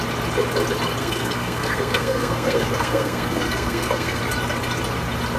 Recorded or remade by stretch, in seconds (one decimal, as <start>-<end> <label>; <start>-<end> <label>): 0.0-1.0 recorded; 1.0-4.2 remade; 4.2-5.4 recorded